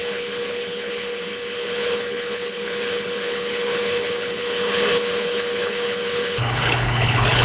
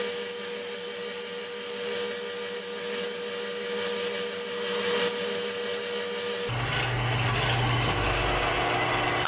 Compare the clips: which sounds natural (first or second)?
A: second